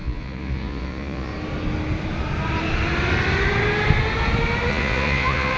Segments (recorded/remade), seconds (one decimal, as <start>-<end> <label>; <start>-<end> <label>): 0.0-1.3 remade; 1.3-4.7 recorded; 4.7-5.6 remade